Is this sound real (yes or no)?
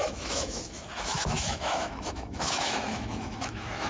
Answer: no